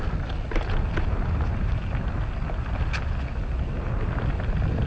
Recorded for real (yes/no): yes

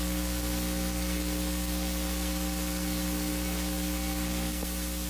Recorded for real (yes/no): no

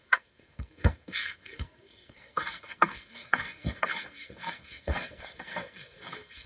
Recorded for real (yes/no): no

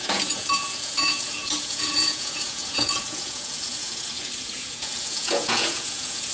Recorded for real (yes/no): no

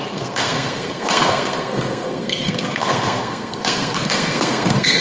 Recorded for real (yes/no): no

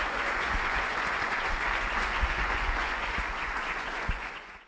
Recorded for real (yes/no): no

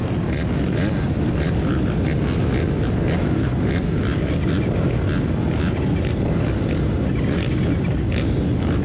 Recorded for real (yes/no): yes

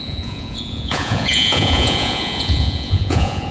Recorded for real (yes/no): no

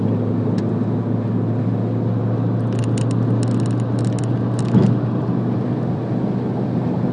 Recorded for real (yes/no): yes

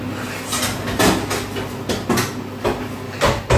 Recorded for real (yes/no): yes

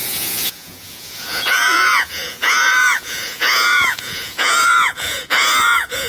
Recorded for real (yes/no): no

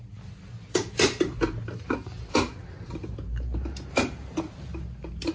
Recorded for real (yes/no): yes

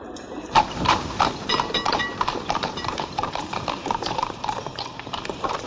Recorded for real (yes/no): no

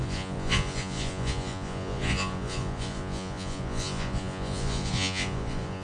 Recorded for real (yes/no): no